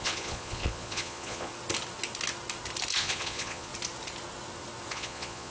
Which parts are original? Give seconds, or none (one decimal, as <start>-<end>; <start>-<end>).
1.5-3.0; 3.7-4.9